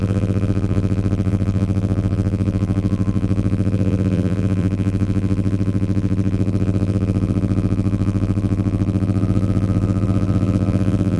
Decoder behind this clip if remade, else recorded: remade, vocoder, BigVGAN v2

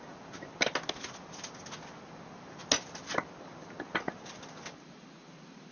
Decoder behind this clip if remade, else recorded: recorded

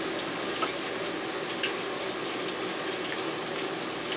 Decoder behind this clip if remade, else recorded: recorded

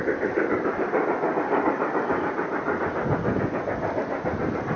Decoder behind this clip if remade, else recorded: recorded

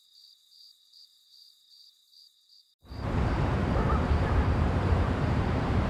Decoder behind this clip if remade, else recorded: remade, vocoder, BigVGAN v2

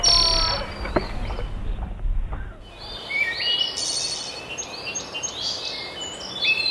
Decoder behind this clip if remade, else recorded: recorded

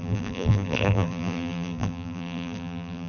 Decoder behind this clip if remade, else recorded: remade, vocoder, BigVGAN v2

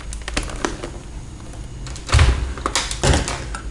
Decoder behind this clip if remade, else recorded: recorded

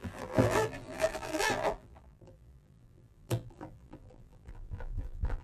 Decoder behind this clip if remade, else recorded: remade, vocoder, BigVGAN v2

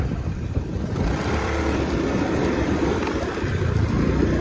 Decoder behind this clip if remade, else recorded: remade, vocoder, BigVGAN v2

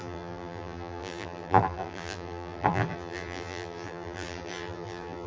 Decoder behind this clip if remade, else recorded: remade, vocoder, BigVGAN v2